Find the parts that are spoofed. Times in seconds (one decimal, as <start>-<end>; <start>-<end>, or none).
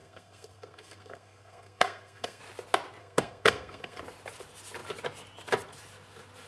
0.0-2.4; 3.0-4.0